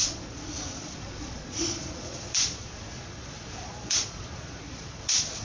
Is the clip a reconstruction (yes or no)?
yes